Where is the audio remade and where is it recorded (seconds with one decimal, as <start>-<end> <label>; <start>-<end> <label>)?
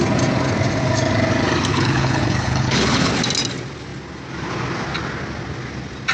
0.0-1.7 recorded; 1.7-3.1 remade; 3.1-6.1 recorded